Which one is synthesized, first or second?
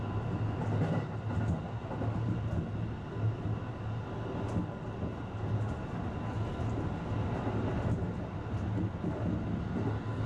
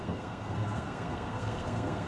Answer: second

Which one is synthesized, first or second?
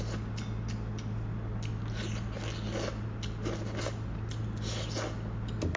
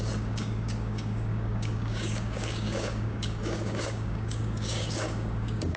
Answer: second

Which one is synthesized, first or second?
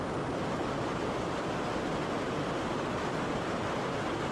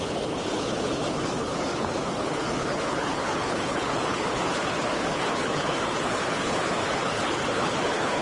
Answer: second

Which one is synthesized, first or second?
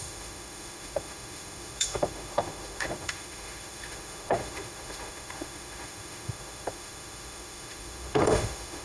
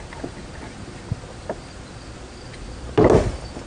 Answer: first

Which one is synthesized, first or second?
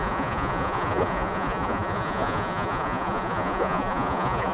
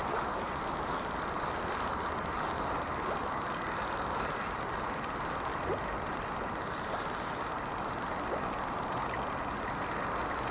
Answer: first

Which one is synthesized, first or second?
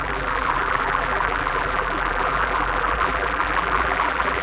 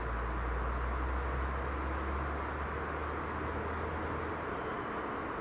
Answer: first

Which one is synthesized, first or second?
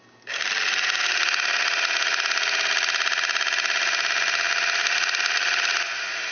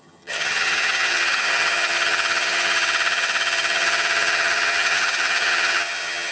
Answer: second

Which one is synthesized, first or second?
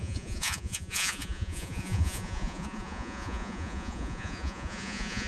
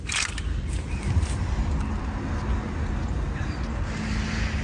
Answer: first